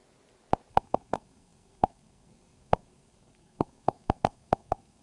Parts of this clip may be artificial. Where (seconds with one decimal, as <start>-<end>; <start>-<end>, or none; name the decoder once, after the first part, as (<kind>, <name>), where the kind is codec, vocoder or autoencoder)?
0.7-5.0 (codec, SNAC)